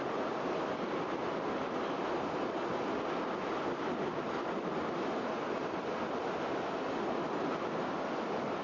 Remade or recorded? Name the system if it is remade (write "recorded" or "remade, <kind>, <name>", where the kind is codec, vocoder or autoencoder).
recorded